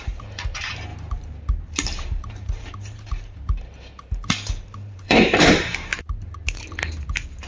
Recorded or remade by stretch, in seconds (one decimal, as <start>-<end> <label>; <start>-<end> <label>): 0.0-5.9 remade; 5.9-7.5 recorded